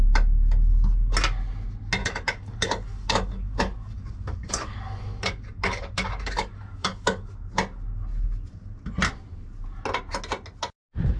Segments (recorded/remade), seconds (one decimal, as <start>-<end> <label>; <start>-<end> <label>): 0.0-2.0 recorded; 2.0-7.3 remade; 7.3-11.2 recorded